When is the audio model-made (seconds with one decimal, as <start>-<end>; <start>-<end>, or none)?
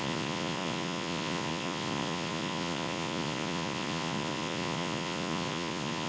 0.0-6.1